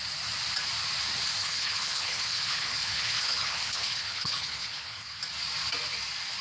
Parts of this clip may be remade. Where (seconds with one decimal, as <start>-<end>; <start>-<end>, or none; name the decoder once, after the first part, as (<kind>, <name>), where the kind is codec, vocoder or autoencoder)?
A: 1.4-5.2 (codec, HILCodec)